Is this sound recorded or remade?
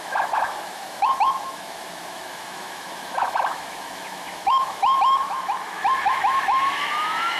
remade